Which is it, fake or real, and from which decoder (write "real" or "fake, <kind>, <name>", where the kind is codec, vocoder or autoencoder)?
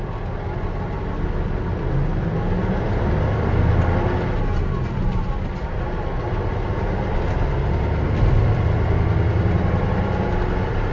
real